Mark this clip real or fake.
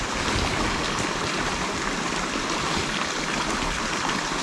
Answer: real